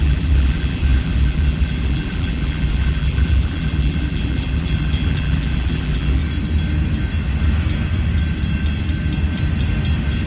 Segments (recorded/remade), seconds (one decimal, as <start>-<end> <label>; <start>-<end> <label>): 0.0-6.2 remade; 6.2-10.3 recorded